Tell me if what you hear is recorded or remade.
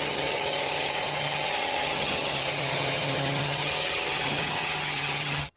remade